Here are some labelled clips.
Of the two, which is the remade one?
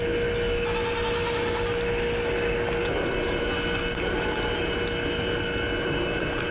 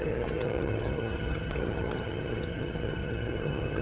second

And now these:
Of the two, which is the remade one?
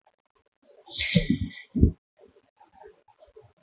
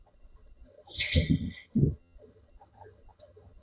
second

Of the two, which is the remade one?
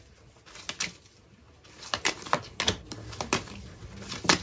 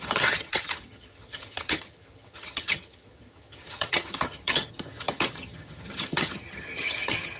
second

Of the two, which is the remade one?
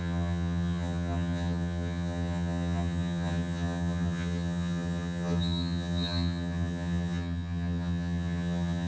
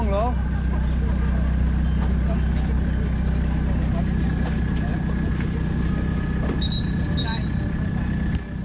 first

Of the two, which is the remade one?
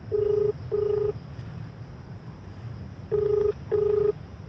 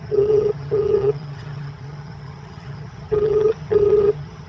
second